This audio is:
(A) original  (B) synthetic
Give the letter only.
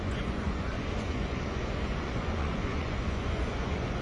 B